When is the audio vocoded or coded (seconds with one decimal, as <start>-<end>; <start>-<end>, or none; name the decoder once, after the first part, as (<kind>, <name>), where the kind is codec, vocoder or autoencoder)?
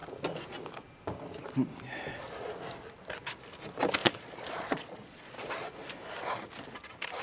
4.0-5.5 (vocoder, Vocos)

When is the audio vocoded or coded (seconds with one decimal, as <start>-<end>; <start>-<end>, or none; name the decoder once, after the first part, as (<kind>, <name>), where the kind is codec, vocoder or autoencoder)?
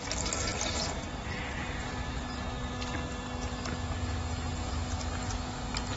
none